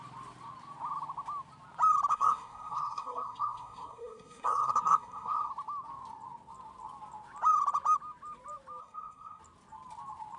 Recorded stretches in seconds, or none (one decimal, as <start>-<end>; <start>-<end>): 0.0-2.1; 5.5-8.8; 9.4-10.4